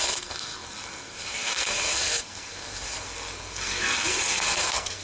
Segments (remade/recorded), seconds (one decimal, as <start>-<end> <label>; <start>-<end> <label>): 0.0-5.0 remade